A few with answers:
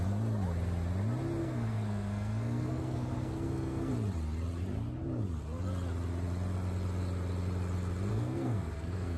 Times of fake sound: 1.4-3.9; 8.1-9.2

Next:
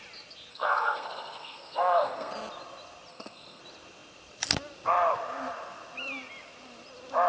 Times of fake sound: 0.5-2.3; 3.1-3.6

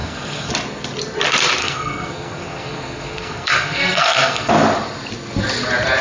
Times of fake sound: 0.0-0.5; 1.6-4.5

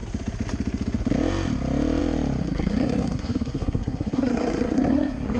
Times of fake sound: 2.4-5.4

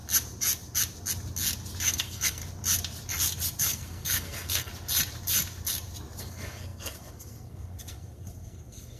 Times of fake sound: 1.9-2.4; 3.6-4.7; 6.2-9.0

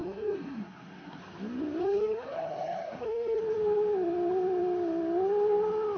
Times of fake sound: 0.0-1.2; 1.8-3.4

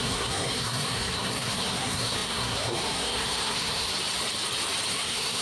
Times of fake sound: 0.0-3.9; 4.9-5.4

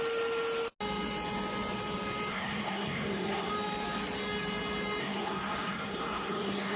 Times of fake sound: 2.3-3.5; 5.0-6.8